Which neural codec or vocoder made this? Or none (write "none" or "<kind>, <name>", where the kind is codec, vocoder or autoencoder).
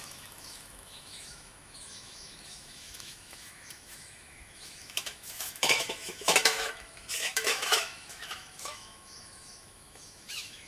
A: autoencoder, DAC-VAE